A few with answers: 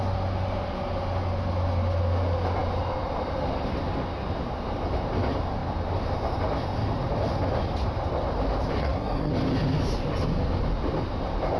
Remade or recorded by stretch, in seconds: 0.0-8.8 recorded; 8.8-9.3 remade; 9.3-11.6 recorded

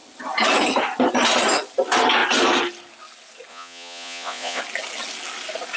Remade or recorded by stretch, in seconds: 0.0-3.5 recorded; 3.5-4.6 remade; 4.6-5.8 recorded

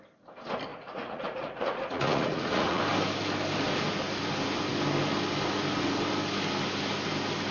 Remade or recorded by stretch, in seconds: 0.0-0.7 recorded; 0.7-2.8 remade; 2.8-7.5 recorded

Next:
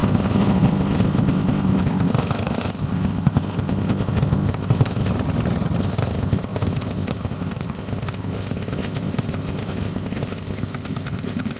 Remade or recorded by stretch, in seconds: 0.0-5.1 remade; 5.1-5.8 recorded; 5.8-11.6 remade

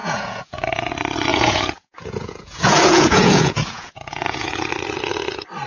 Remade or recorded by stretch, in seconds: 0.0-0.9 remade; 0.9-1.3 recorded; 1.3-4.7 remade; 4.7-5.7 recorded

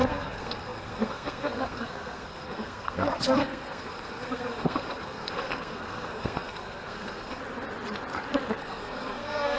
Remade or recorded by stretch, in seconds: 0.0-7.4 remade; 7.4-8.6 recorded; 8.6-9.6 remade

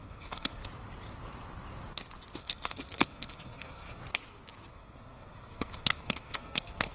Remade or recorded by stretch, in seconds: 0.0-0.6 remade; 0.6-2.4 recorded; 2.4-4.0 remade; 4.0-4.7 recorded; 4.7-6.9 remade